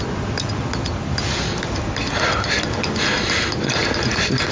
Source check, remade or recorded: recorded